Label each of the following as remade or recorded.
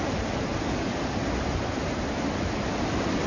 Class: recorded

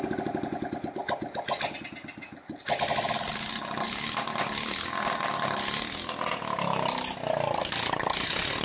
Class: recorded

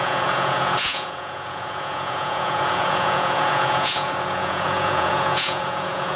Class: remade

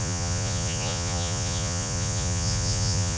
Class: remade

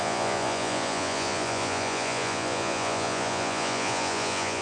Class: remade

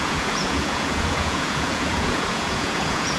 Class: remade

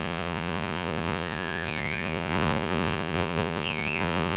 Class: remade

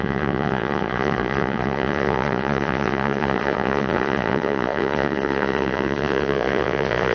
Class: remade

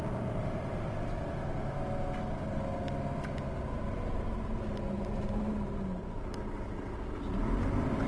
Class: recorded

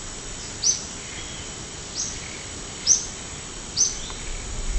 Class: recorded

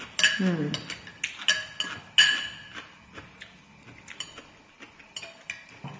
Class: recorded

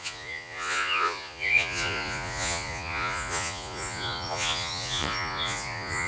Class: remade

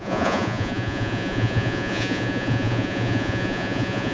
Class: remade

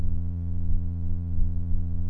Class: remade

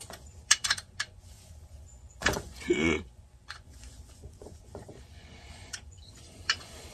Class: remade